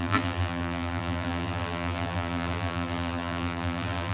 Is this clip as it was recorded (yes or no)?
no